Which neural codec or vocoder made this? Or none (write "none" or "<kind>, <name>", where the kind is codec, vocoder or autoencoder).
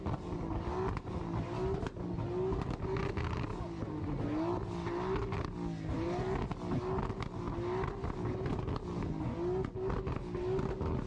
none